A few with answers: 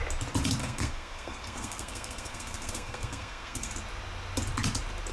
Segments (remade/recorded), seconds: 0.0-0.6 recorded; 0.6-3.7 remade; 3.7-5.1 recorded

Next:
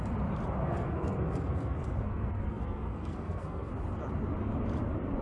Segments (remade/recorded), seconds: 0.0-0.6 recorded; 0.6-3.7 remade; 3.7-5.2 recorded

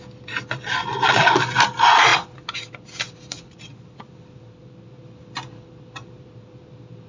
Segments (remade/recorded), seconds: 0.0-7.1 recorded

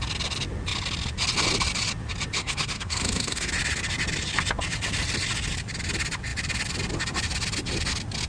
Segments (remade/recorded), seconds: 0.0-2.4 recorded; 2.4-3.5 remade; 3.5-8.3 recorded

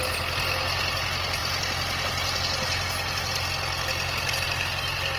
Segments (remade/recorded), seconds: 0.0-5.2 recorded

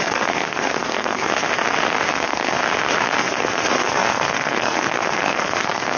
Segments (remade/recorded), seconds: 0.0-1.3 remade; 1.3-2.1 recorded; 2.1-2.6 remade; 2.6-3.2 recorded; 3.2-6.0 remade

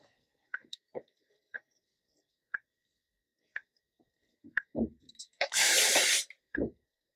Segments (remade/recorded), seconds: 0.0-5.7 remade; 5.7-6.4 recorded; 6.4-7.2 remade

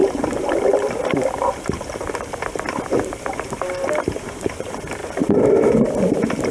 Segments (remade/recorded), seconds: 0.0-6.5 recorded